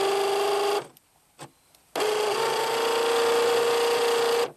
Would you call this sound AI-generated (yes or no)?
no